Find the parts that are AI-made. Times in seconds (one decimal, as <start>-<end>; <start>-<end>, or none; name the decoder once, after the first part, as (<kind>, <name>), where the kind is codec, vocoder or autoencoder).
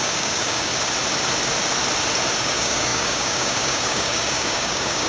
0.0-0.7 (codec, DAC); 2.4-5.1